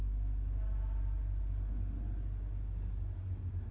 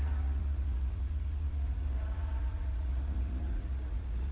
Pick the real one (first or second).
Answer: first